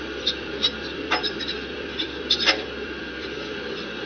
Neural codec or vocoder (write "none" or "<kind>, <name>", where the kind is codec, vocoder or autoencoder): vocoder, BigVGAN v2